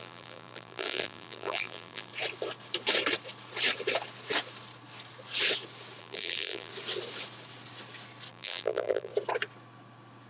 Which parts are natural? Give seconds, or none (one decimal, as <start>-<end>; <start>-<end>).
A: 2.1-6.0; 6.7-8.3; 9.1-10.3

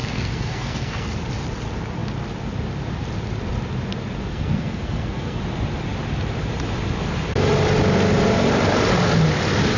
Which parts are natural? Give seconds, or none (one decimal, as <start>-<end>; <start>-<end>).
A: 1.1-4.3; 5.4-9.8

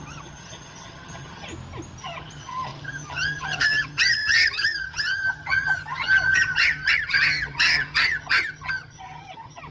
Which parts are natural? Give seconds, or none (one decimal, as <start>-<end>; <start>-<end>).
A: 1.5-2.0

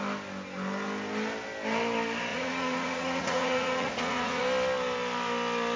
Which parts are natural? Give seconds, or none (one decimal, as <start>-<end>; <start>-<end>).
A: 0.0-2.3; 4.4-5.8

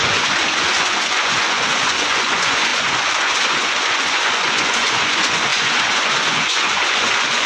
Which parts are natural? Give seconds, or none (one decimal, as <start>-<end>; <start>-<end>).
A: none

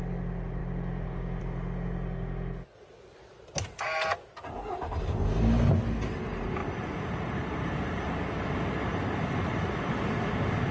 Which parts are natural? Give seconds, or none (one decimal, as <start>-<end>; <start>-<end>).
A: 0.0-6.6; 8.1-8.9; 9.9-10.7